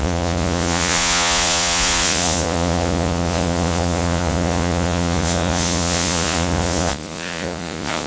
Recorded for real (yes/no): no